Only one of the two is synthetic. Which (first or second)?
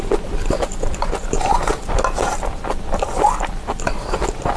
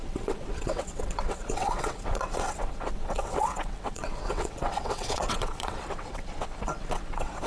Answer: second